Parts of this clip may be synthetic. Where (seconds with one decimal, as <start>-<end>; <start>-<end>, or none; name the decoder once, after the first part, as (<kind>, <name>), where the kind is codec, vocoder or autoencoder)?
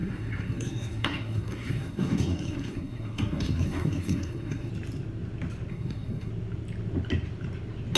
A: 0.0-4.7 (codec, SNAC); 5.7-6.3